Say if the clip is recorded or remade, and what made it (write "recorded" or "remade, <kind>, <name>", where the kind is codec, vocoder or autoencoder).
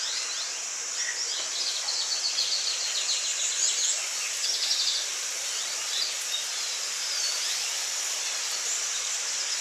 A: recorded